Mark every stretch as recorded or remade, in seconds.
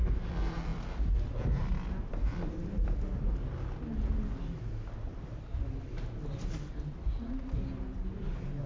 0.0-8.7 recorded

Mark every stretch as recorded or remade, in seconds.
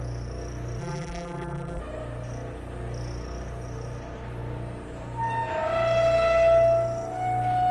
0.0-0.8 recorded; 0.8-1.8 remade; 1.8-7.7 recorded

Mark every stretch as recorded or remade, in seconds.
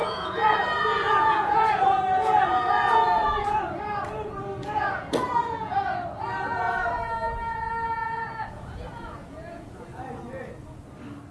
0.0-3.6 remade; 3.6-4.6 recorded; 4.6-5.8 remade; 5.8-8.0 recorded; 8.0-10.0 remade; 10.0-11.3 recorded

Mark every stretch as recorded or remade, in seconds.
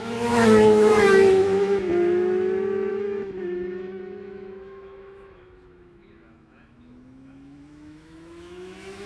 0.0-1.9 remade; 1.9-2.9 recorded; 2.9-9.1 remade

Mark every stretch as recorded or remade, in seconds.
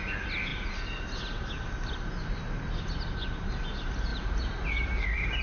0.0-4.1 recorded; 4.1-5.4 remade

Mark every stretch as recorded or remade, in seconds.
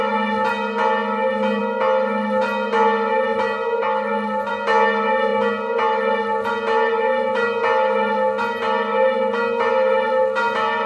0.0-10.9 recorded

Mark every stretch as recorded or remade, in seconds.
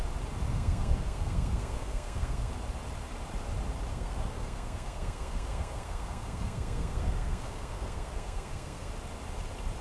0.0-0.5 recorded; 0.5-2.5 remade; 2.5-3.9 recorded; 3.9-8.9 remade; 8.9-9.8 recorded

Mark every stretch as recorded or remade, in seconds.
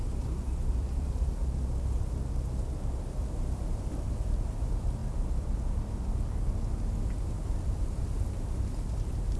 0.0-1.4 remade; 1.4-3.2 recorded; 3.2-5.0 remade; 5.0-7.8 recorded; 7.8-9.4 remade